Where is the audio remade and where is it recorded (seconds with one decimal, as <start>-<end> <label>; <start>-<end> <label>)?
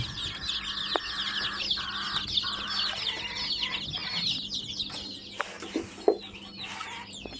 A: 0.0-7.4 recorded